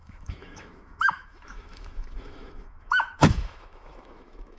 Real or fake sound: fake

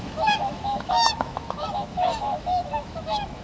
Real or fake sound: fake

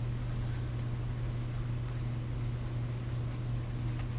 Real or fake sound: real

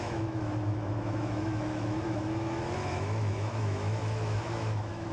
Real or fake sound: fake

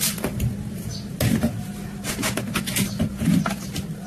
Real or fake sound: real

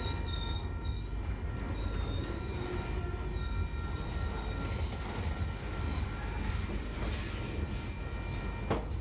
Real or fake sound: real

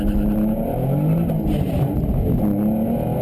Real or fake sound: real